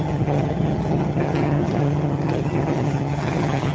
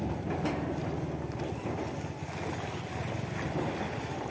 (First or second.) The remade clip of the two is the first